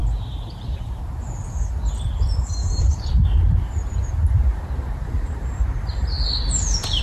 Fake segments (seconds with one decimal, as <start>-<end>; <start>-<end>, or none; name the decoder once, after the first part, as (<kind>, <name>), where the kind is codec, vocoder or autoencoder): 0.0-1.0 (vocoder, BigVGAN v2); 2.6-7.0